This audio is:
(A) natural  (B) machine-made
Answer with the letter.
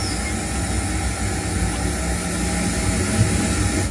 A